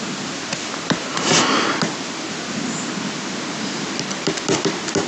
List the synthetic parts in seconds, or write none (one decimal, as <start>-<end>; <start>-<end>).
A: none